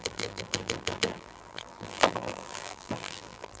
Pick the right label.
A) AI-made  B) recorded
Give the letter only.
A